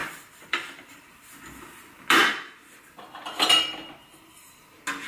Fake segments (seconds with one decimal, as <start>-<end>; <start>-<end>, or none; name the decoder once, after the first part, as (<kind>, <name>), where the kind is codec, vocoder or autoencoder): 0.0-1.1 (vocoder, BigVGAN v2)